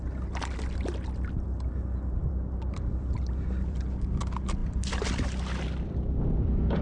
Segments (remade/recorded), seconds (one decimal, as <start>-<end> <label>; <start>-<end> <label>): 0.0-2.2 recorded; 2.2-3.8 remade; 3.8-6.8 recorded